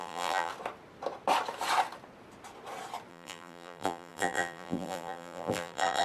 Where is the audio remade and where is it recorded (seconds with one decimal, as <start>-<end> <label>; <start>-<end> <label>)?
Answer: 0.0-0.5 remade; 0.5-3.1 recorded; 3.1-6.0 remade